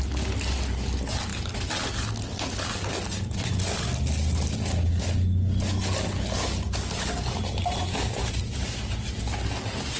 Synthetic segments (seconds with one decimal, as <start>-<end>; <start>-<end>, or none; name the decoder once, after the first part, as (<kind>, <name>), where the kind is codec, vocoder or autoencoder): none